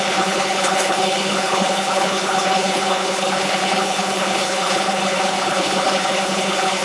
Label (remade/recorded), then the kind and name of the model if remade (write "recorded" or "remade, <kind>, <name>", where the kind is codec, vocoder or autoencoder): remade, codec, HILCodec